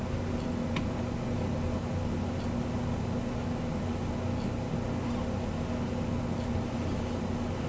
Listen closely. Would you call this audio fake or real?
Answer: real